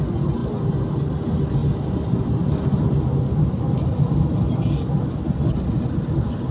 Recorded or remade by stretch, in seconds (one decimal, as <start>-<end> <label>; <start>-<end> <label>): 0.0-6.5 recorded